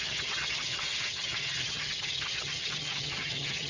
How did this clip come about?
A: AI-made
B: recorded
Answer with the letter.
A